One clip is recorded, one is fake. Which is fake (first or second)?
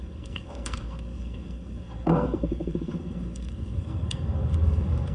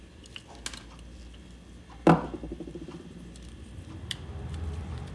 first